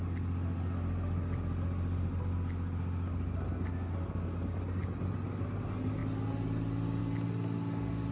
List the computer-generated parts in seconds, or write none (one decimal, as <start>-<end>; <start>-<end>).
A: none

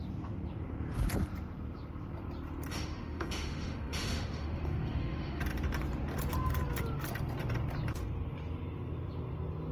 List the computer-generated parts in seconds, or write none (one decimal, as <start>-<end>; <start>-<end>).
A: 2.7-5.4

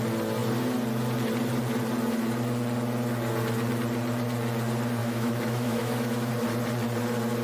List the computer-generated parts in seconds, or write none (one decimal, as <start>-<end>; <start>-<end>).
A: 5.0-6.3

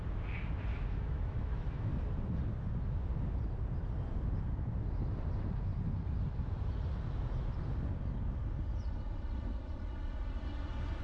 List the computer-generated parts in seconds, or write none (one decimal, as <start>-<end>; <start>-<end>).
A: 0.7-1.9

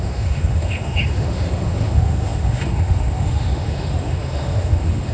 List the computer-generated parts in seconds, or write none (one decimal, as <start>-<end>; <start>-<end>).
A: 0.0-5.1

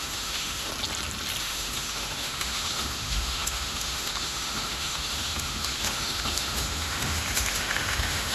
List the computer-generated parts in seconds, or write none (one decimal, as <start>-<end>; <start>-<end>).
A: 0.0-0.7; 1.4-8.3

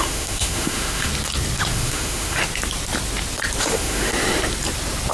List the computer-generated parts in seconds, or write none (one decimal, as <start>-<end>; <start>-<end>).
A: 0.0-1.1; 1.7-2.4; 3.6-4.1

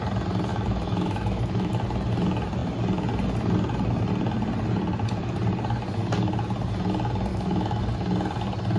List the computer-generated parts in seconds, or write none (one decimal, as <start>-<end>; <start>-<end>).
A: 0.5-1.7; 7.3-7.8